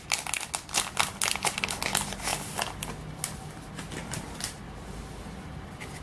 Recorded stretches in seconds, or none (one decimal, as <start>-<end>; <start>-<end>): 0.0-6.0